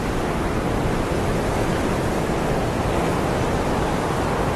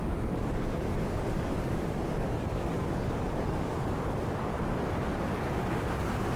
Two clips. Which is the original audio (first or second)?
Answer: first